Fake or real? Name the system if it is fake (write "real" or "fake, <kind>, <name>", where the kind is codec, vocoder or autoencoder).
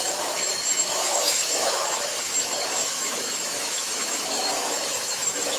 fake, autoencoder, DAC-VAE